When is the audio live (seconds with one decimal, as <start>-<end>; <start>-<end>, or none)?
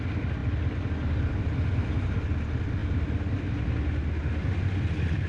0.0-5.3